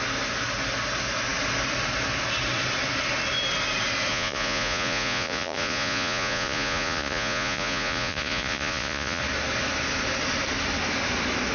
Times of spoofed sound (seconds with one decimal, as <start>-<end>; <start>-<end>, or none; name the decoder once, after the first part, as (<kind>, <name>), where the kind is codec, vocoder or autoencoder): 4.1-9.2 (vocoder, Vocos)